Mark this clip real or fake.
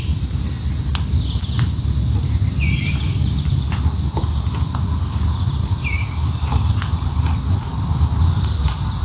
real